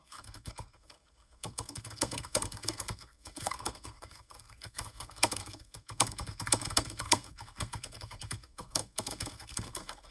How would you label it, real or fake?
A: fake